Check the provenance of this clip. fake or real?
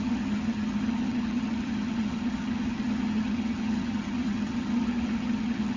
fake